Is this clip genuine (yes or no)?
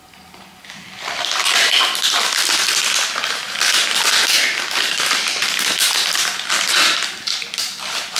yes